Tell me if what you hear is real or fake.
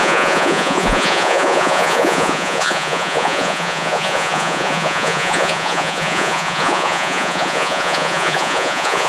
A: fake